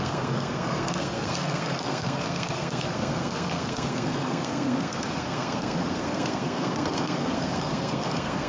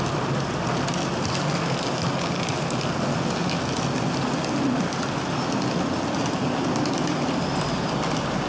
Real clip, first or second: second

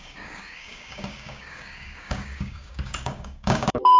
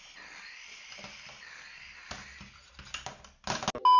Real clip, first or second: second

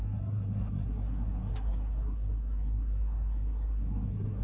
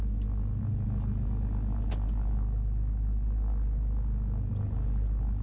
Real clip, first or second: second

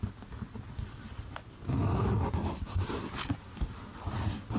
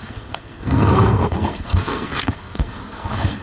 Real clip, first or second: first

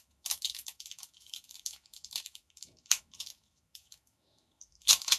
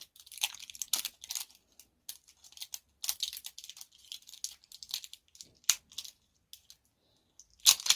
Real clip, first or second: second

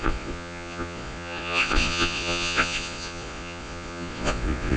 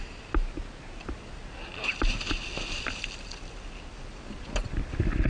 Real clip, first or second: second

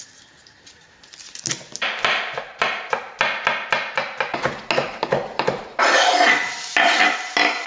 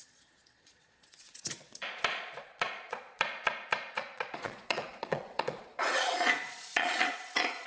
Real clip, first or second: first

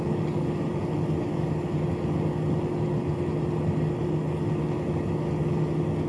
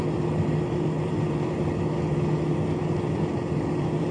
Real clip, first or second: first